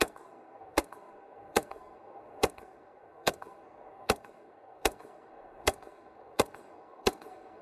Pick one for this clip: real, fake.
fake